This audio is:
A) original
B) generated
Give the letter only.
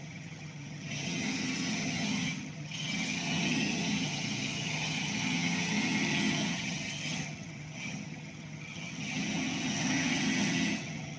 B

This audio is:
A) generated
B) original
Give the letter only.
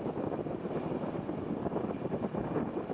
B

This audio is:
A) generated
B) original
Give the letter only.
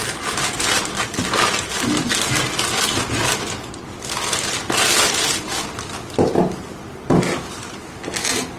B